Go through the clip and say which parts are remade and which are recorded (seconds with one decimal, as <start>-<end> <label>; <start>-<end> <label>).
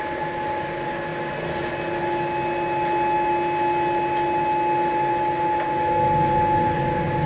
0.0-7.2 recorded